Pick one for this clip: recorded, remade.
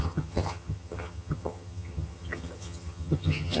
remade